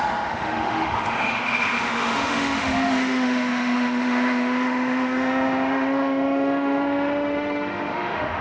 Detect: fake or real fake